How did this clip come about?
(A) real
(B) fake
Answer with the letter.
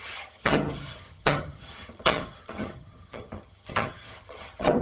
B